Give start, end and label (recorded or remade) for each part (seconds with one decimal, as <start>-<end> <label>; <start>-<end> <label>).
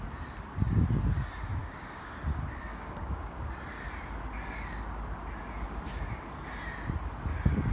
0.0-1.6 recorded; 1.6-2.2 remade; 2.2-2.7 recorded; 2.7-3.5 remade; 3.5-7.7 recorded